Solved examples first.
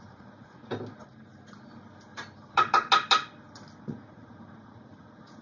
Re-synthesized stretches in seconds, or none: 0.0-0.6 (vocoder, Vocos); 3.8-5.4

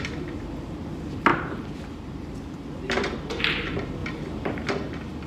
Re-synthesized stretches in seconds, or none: 1.3-3.4 (vocoder, BigVGAN v2)